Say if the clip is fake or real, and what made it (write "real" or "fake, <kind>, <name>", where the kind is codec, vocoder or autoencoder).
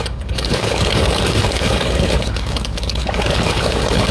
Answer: fake, codec, DAC